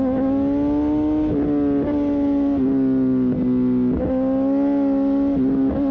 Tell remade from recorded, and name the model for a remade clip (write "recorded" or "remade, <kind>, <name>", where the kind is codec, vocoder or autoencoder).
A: recorded